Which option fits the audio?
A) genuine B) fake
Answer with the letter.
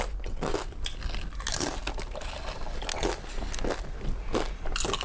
A